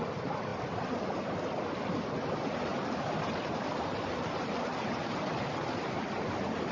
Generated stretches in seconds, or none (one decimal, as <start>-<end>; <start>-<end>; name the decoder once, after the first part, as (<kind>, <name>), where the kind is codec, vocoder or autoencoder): none